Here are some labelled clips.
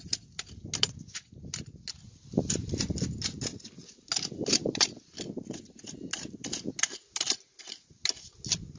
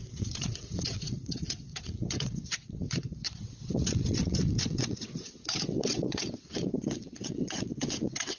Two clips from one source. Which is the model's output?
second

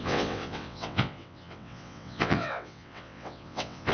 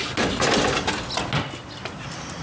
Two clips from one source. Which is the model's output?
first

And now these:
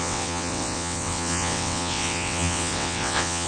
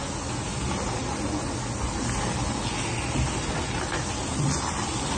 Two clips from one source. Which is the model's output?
first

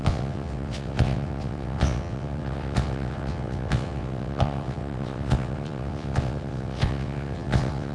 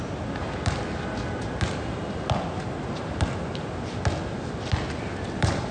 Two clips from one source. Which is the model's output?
first